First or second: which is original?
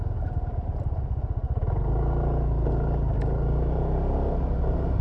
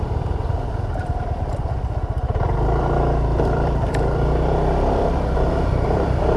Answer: first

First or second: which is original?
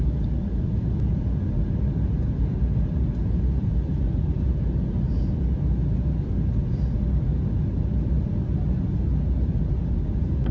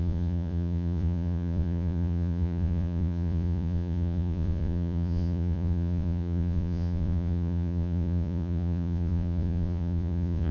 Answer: first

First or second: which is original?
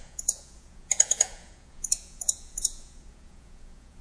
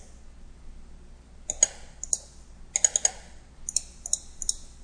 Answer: second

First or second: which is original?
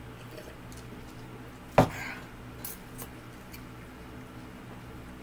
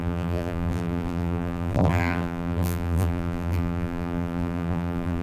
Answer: first